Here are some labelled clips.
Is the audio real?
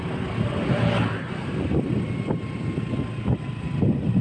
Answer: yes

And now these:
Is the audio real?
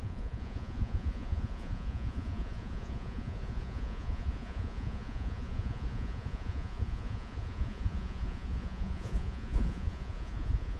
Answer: no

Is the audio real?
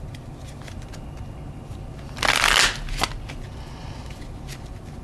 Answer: yes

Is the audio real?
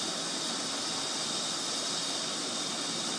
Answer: yes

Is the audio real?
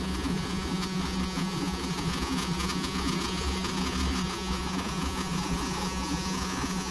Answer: no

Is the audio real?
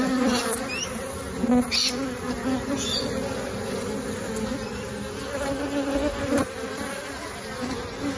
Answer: yes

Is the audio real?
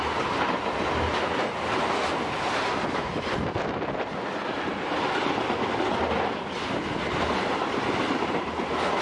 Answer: yes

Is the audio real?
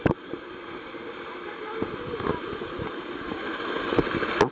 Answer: yes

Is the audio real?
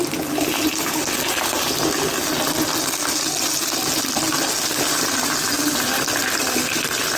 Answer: yes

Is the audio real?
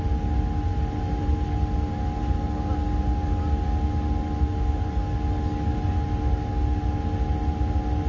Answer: yes